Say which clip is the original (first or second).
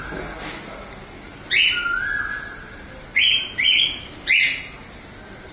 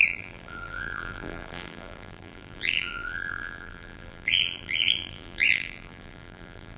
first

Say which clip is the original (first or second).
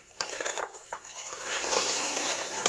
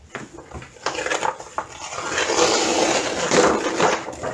second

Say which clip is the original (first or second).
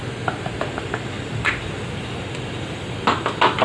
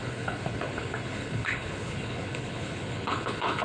first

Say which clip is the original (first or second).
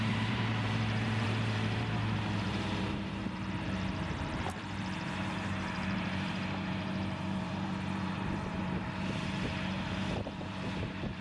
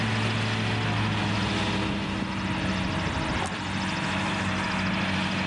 second